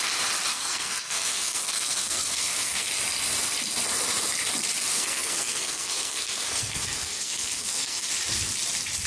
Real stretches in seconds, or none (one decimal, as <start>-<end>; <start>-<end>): 0.0-0.5; 2.9-4.9; 8.1-9.1